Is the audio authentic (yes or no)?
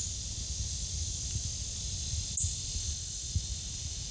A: yes